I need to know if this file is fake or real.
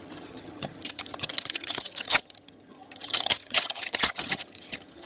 fake